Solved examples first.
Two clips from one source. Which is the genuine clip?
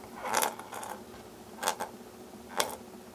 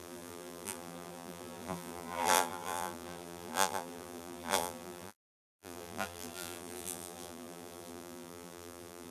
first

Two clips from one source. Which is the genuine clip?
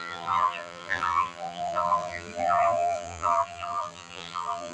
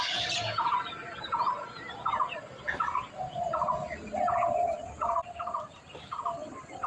second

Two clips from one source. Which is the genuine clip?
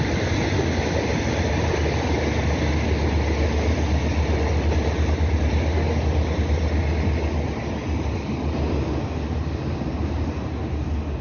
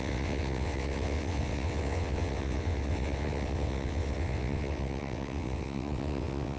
first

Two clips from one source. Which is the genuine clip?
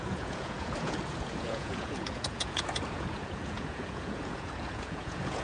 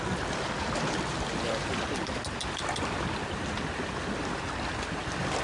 second